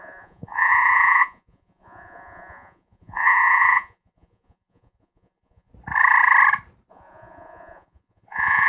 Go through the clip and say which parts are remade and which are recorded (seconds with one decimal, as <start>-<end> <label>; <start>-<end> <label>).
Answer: 0.0-5.7 remade; 5.7-6.9 recorded; 6.9-8.7 remade